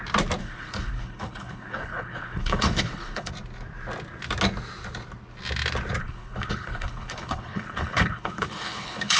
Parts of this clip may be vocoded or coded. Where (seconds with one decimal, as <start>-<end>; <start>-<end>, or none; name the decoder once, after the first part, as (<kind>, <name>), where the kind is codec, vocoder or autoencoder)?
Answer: 0.4-3.3 (codec, HILCodec); 6.0-9.2